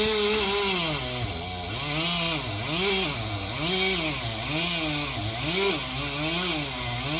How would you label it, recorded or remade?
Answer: recorded